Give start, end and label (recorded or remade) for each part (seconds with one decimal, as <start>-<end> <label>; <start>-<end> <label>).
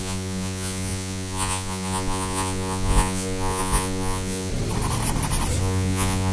0.0-4.5 remade; 4.5-5.6 recorded; 5.6-6.3 remade